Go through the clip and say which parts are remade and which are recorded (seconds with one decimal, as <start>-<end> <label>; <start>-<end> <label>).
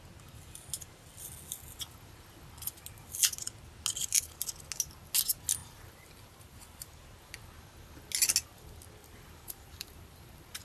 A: 0.0-5.6 recorded; 5.6-7.3 remade; 7.3-9.0 recorded; 9.0-10.6 remade